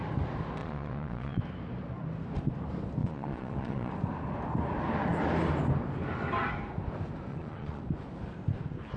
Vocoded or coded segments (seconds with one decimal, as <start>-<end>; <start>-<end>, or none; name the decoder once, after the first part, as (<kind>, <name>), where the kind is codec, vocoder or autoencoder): 0.6-1.4 (vocoder, Vocos); 3.0-3.9; 7.3-7.8